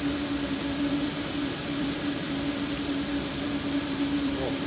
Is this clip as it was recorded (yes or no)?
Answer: no